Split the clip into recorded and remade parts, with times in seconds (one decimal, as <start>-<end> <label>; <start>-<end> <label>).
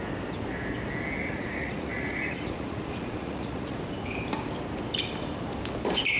0.0-1.2 recorded; 1.2-3.8 remade; 3.8-6.2 recorded